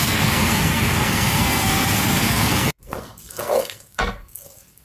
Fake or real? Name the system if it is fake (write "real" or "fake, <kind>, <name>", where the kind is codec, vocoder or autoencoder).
fake, codec, SNAC